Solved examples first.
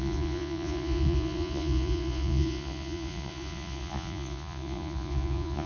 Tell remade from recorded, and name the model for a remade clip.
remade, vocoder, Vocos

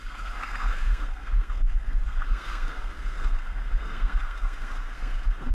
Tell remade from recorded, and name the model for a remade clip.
remade, codec, SNAC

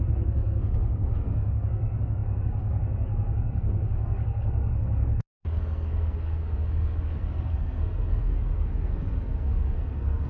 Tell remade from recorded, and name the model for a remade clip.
remade, codec, SNAC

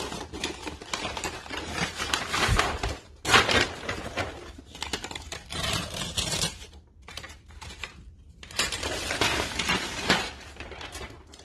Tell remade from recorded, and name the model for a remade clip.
remade, vocoder, BigVGAN v2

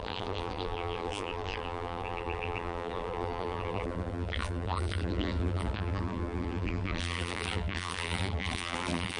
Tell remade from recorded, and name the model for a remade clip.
remade, vocoder, BigVGAN v2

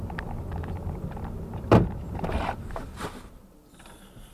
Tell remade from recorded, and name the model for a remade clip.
recorded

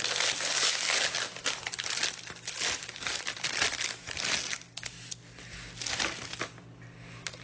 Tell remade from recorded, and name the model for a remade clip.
recorded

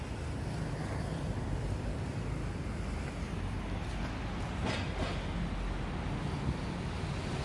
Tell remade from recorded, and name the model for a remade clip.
recorded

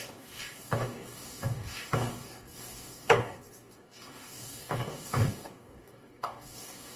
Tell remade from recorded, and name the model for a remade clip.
remade, codec, DAC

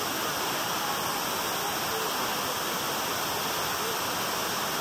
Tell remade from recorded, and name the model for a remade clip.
recorded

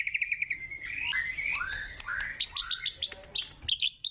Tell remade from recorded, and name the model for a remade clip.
recorded